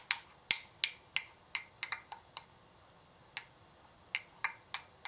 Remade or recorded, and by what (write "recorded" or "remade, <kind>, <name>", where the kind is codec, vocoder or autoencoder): recorded